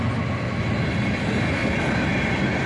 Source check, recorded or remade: recorded